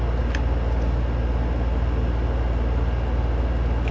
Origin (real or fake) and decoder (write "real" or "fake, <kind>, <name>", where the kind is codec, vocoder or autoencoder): real